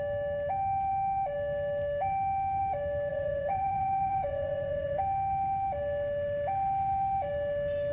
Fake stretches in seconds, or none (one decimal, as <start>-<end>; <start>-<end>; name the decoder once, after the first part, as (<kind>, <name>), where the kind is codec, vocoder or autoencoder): 3.1-5.0 (vocoder, Vocos)